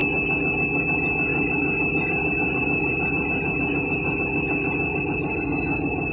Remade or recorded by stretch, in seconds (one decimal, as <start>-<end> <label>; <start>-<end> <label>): 0.0-1.3 recorded; 1.3-5.0 remade; 5.0-6.1 recorded